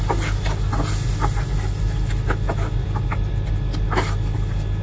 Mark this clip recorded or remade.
recorded